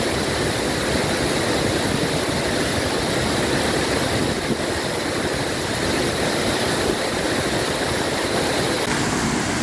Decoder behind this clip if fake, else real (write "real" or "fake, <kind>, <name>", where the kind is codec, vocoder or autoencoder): real